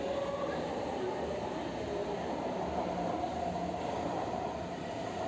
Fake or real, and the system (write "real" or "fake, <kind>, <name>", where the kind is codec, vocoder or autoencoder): real